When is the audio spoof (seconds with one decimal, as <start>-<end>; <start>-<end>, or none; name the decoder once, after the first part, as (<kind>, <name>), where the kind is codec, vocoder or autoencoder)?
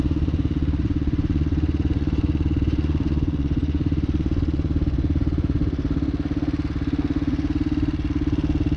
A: 0.0-5.6 (vocoder, Vocos)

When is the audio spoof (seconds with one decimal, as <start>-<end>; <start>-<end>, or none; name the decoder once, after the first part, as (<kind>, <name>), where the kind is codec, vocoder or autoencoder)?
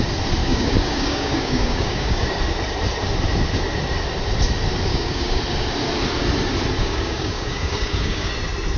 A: 0.4-2.4 (codec, DAC); 4.9-5.4; 6.8-8.3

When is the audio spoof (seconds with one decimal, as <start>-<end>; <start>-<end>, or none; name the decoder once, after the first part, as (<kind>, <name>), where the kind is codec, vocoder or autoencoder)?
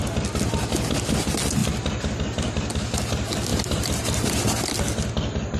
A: none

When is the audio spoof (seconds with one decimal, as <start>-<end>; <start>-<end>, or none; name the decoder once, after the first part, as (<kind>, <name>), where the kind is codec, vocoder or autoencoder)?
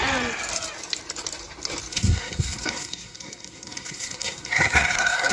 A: 1.9-5.3 (codec, SNAC)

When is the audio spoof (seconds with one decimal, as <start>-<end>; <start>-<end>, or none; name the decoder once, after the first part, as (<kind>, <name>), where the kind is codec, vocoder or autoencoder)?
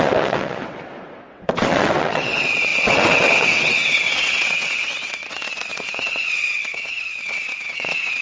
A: 0.0-8.2 (vocoder, WaveNeXt)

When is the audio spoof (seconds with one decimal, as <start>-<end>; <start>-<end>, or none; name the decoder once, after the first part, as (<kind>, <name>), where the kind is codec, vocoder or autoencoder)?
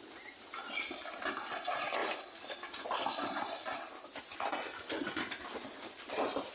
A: none